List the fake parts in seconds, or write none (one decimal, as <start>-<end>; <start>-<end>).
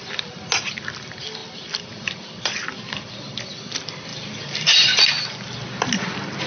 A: 1.4-3.4; 4.1-5.0